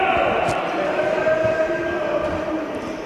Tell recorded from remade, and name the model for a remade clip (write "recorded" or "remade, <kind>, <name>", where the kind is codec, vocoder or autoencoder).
recorded